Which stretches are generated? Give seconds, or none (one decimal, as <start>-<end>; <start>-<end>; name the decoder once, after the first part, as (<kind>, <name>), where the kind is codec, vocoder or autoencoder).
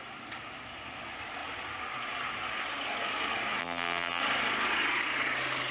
3.6-4.2 (vocoder, BigVGAN v2)